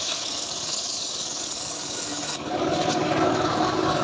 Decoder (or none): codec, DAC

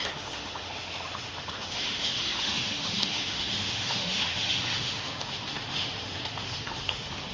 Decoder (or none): autoencoder, DAC-VAE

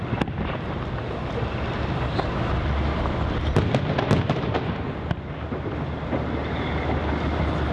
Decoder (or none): none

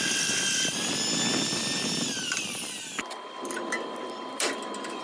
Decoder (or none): vocoder, BigVGAN v2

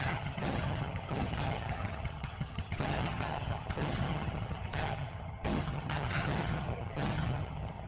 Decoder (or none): vocoder, HiFi-GAN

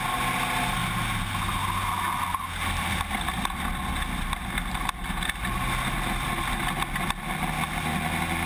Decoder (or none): none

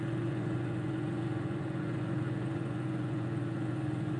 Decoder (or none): vocoder, Vocos